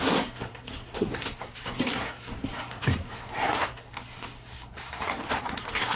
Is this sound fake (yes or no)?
yes